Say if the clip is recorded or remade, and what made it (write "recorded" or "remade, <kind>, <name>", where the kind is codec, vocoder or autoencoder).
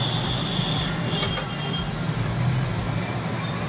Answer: recorded